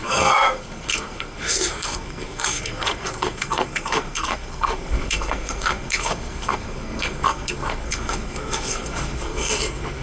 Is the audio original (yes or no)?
no